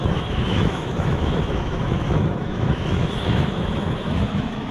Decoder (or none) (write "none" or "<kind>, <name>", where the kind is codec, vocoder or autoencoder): autoencoder, DAC-VAE